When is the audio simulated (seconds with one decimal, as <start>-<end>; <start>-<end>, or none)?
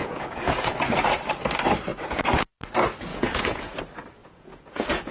0.0-0.7; 1.9-2.5; 3.1-3.8; 4.2-5.1